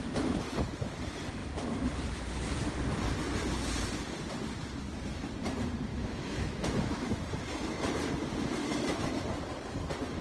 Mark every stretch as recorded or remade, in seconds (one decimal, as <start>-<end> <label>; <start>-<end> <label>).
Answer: 0.0-5.9 recorded; 5.9-7.2 remade; 7.2-8.6 recorded; 8.6-9.1 remade; 9.1-10.2 recorded